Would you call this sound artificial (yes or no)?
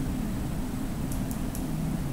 no